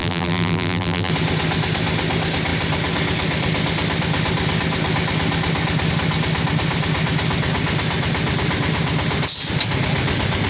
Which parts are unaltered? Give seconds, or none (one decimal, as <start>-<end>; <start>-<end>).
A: 1.1-10.5